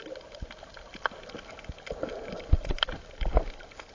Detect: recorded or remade recorded